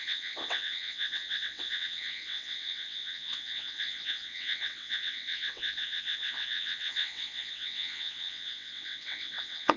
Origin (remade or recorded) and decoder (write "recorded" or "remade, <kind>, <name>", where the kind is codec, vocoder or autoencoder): remade, vocoder, WaveNeXt